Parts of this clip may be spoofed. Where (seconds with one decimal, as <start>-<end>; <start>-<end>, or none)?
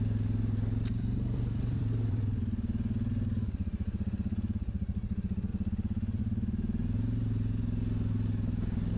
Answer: 0.9-2.4